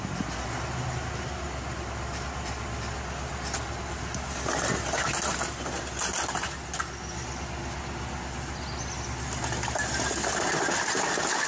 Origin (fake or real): real